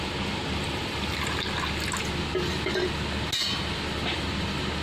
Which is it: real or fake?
real